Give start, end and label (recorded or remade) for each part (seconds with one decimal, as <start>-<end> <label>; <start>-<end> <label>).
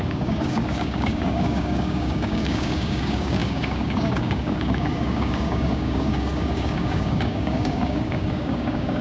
0.0-9.0 remade